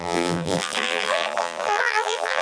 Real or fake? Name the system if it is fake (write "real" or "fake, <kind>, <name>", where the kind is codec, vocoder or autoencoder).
fake, vocoder, BigVGAN v2